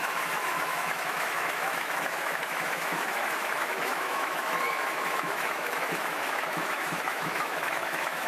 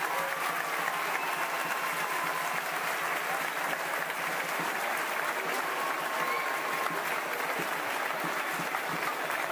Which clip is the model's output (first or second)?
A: first